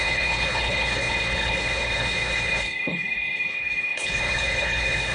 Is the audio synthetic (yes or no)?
yes